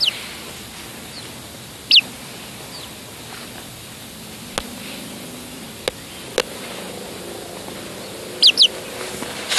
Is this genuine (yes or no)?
yes